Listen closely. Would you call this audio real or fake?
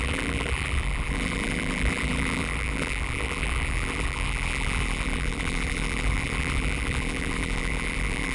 fake